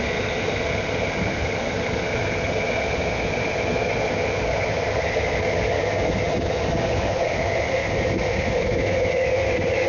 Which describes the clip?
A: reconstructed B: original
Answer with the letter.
A